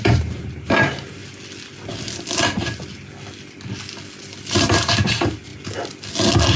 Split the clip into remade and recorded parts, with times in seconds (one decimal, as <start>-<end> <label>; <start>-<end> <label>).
0.0-1.2 remade; 1.2-4.5 recorded; 4.5-5.5 remade; 5.5-6.6 recorded